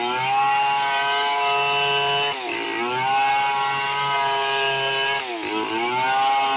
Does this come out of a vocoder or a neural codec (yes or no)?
no